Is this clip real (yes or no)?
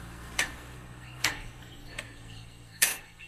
no